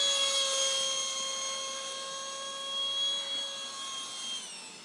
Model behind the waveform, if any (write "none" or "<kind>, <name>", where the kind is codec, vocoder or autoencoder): none